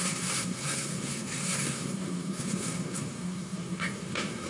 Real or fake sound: fake